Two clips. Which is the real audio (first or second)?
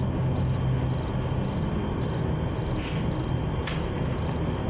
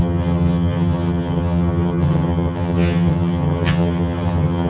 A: first